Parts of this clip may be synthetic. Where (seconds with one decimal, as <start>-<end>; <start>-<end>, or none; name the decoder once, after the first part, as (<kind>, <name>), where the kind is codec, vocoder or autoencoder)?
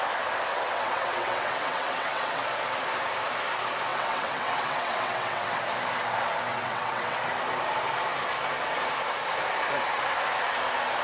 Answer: 0.5-2.4 (vocoder, WaveNeXt); 3.9-5.6; 6.5-7.2